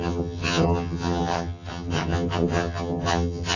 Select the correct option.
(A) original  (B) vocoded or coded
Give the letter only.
B